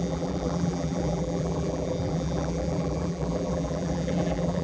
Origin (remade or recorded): remade